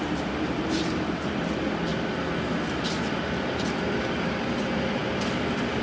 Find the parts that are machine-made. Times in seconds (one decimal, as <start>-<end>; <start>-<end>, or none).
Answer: none